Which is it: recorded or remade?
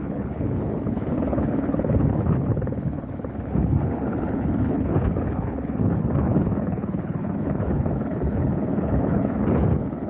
remade